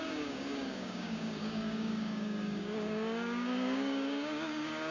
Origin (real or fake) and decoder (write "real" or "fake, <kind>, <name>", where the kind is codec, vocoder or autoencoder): fake, codec, DAC